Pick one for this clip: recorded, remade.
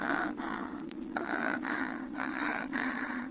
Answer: remade